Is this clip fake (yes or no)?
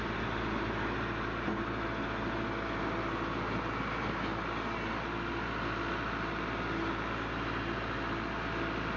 no